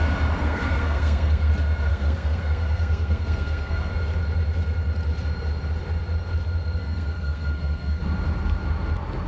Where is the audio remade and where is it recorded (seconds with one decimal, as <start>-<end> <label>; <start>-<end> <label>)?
0.0-0.4 recorded; 0.4-1.5 remade; 1.5-1.9 recorded; 1.9-3.9 remade; 3.9-6.8 recorded; 6.8-8.0 remade; 8.0-9.3 recorded